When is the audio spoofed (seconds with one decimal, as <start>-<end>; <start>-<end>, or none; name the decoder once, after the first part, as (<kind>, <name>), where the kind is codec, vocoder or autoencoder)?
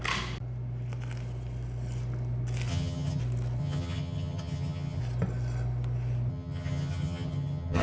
2.7-3.2 (vocoder, HiFi-GAN); 3.6-5.0; 6.3-7.8